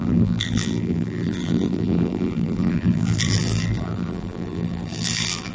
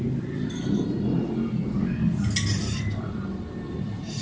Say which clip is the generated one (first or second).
first